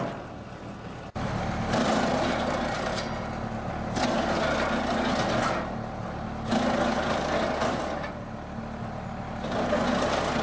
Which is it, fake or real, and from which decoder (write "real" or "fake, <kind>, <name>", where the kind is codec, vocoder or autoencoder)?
real